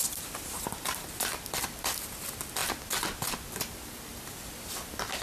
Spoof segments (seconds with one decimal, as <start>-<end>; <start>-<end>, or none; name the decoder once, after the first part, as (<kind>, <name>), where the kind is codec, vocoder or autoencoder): 0.0-2.6 (vocoder, BigVGAN v2); 3.7-5.2